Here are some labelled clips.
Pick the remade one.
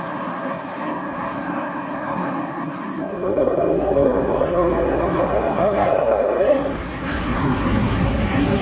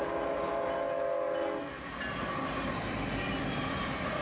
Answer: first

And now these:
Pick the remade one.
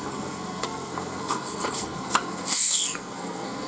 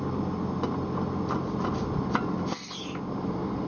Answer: first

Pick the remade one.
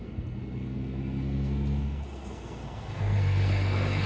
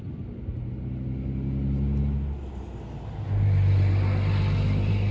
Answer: first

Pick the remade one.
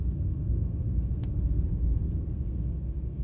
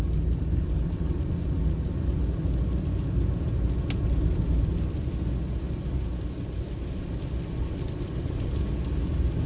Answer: first